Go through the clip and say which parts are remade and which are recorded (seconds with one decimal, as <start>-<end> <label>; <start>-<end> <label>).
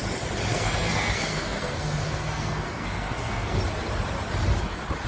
0.0-0.5 recorded; 0.5-3.6 remade; 3.6-5.1 recorded